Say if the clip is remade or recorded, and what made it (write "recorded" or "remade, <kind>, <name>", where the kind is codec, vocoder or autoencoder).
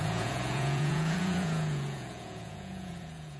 remade, vocoder, Vocos